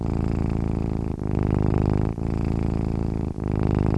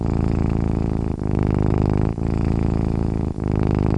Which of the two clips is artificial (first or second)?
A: second